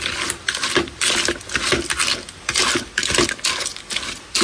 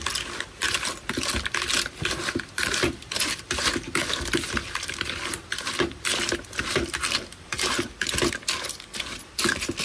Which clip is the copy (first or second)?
second